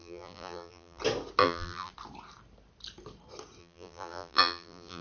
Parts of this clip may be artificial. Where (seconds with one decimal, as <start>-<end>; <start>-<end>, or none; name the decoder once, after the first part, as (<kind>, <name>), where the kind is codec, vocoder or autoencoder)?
0.0-1.0 (vocoder, BigVGAN v2); 1.4-1.9; 3.6-5.0